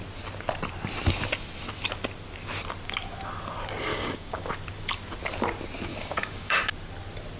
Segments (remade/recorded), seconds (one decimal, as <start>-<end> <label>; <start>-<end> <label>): 0.0-3.9 recorded; 3.9-4.5 remade; 4.5-5.9 recorded; 5.9-6.6 remade; 6.6-7.4 recorded